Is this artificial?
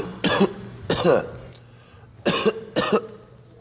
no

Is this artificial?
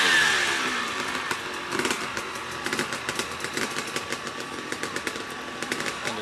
no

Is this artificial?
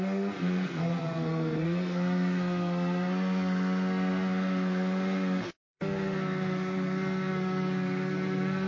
yes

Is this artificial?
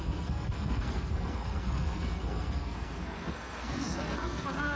yes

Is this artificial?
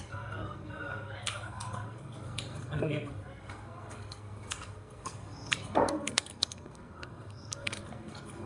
yes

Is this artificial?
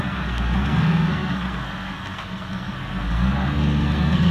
yes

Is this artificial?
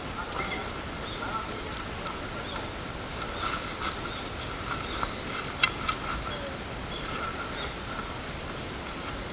no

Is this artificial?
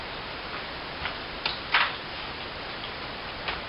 no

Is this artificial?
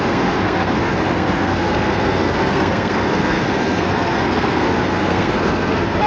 yes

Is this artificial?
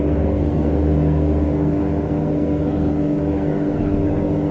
yes